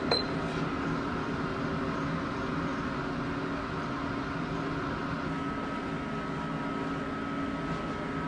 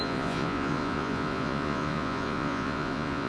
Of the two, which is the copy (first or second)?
second